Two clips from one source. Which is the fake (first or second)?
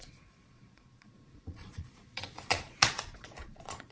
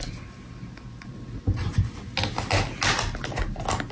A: first